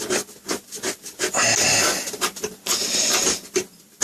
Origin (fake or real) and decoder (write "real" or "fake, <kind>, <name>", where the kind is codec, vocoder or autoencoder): real